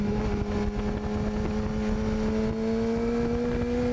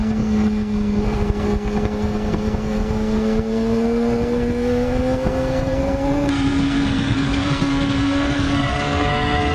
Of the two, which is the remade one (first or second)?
second